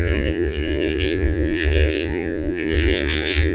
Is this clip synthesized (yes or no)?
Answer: yes